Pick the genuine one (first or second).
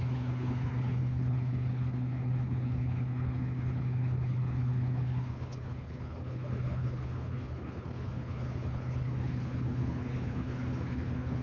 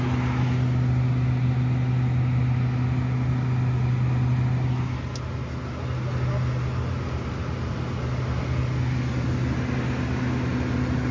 second